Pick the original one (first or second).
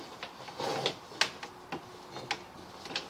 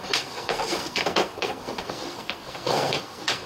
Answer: first